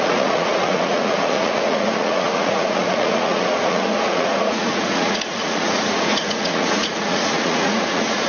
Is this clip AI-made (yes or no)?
yes